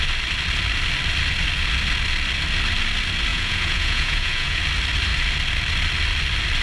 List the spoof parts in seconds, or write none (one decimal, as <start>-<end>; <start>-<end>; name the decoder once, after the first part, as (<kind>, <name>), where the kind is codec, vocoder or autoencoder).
3.3-4.6 (vocoder, Vocos)

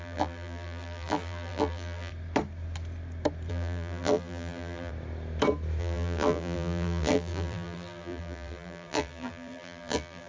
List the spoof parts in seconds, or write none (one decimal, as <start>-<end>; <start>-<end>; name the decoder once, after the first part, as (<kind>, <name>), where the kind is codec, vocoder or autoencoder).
0.0-2.1 (vocoder, BigVGAN v2); 3.5-4.9; 5.8-10.3